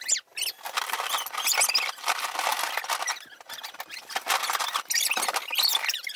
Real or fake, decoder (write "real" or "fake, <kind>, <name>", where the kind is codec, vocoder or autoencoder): real